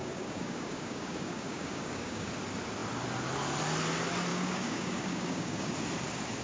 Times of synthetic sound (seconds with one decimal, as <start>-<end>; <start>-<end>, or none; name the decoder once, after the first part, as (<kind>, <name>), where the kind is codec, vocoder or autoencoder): 0.0-2.3 (codec, DAC); 4.3-5.7